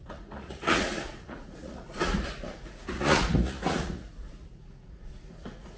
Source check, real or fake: fake